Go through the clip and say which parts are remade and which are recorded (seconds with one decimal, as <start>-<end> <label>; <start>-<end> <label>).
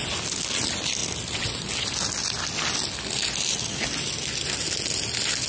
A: 0.0-5.5 recorded